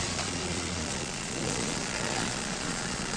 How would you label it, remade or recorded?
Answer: remade